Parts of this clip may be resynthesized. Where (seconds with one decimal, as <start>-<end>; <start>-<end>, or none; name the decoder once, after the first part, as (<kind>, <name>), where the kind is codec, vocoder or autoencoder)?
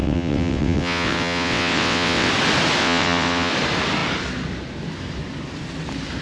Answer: 0.0-2.3 (vocoder, WaveNeXt); 2.8-3.5